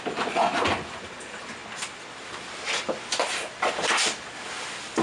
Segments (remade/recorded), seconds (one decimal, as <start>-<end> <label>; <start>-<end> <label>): 0.0-5.0 remade